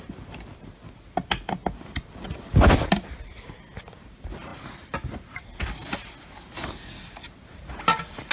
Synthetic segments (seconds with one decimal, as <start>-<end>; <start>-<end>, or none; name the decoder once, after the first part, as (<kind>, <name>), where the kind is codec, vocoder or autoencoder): none